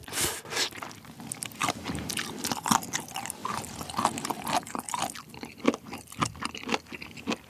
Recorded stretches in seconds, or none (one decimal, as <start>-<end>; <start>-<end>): 0.0-1.6; 2.7-3.4; 6.5-7.5